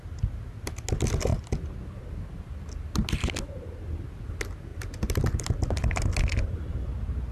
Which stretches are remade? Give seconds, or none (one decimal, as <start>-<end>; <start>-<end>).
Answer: none